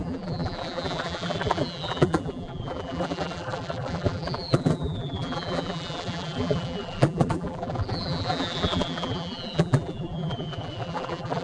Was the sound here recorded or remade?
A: remade